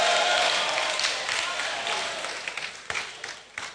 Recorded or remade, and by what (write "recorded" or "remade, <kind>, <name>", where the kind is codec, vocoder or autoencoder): recorded